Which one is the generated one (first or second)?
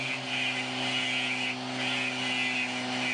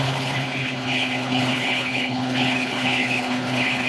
second